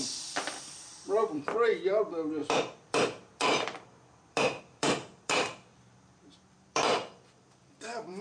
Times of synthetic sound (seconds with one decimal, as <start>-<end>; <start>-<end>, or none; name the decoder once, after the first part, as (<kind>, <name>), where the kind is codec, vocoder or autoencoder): 0.0-8.2 (vocoder, BigVGAN v2)